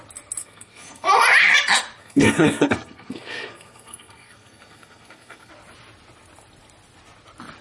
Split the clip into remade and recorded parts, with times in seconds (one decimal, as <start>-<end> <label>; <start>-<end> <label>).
0.0-0.4 recorded; 0.4-1.1 remade; 1.1-2.0 recorded; 2.0-5.5 remade; 5.5-7.6 recorded